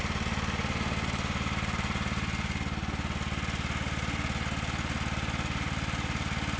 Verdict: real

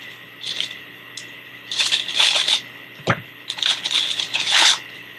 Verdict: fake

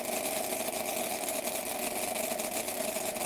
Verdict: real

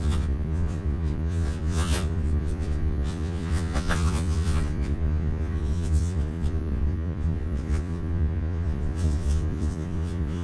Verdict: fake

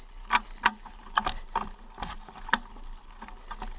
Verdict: real